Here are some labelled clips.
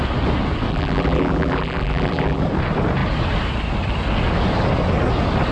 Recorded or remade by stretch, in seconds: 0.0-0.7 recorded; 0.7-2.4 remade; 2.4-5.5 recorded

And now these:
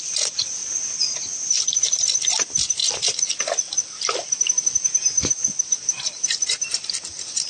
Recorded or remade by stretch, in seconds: 0.0-0.6 remade; 0.6-1.8 recorded; 1.8-2.8 remade; 2.8-5.6 recorded; 5.6-7.5 remade

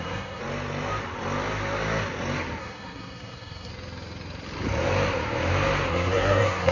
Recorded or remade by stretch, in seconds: 0.0-0.4 remade; 0.4-2.6 recorded; 2.6-3.7 remade; 3.7-5.9 recorded; 5.9-6.7 remade

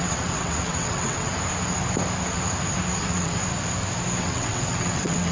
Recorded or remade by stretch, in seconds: 0.0-1.3 remade; 1.3-3.0 recorded; 3.0-3.4 remade; 3.4-4.2 recorded; 4.2-5.3 remade